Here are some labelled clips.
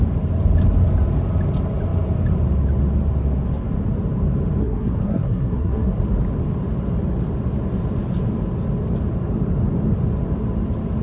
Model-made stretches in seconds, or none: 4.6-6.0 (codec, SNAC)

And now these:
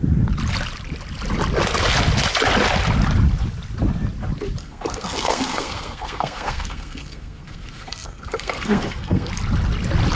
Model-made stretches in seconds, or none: 4.6-9.3 (codec, SNAC)

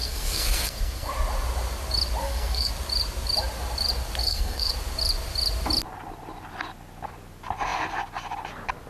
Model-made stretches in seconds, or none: 0.0-1.1 (codec, SNAC); 2.2-2.7; 4.2-4.7

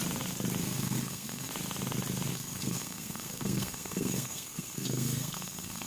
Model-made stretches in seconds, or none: 0.6-1.5 (codec, SNAC); 2.3-5.9